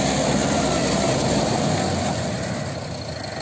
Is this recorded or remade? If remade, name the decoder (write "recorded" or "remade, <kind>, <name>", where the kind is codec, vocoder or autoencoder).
recorded